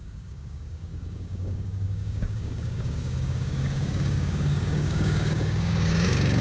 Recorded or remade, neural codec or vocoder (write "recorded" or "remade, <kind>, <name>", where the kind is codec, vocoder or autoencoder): remade, codec, DAC